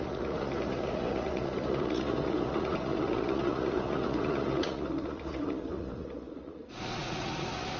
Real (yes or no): no